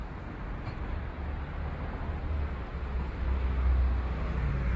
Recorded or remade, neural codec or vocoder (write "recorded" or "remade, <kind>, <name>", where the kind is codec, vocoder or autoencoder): recorded